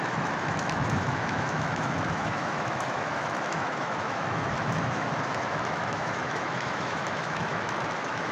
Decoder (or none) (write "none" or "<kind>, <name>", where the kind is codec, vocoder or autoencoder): autoencoder, DAC-VAE